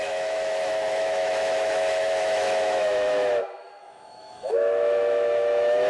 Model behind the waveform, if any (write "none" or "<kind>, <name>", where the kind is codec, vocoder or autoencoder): autoencoder, DAC-VAE